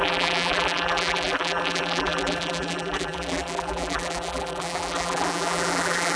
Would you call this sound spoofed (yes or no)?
yes